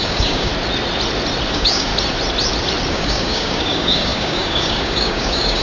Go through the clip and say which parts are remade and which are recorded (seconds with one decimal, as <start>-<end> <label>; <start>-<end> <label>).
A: 0.0-0.5 remade; 0.5-1.5 recorded; 1.5-1.9 remade; 1.9-2.9 recorded; 2.9-5.6 remade